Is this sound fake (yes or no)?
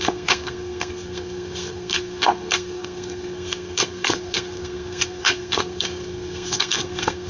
yes